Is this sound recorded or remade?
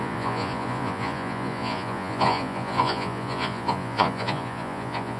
remade